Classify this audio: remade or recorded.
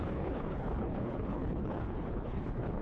remade